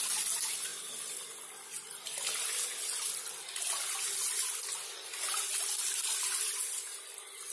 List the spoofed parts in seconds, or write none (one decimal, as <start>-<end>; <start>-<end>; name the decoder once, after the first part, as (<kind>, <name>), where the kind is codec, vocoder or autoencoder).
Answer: none